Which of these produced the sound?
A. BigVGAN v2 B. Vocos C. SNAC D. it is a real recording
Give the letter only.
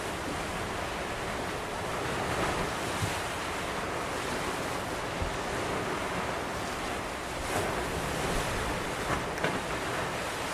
D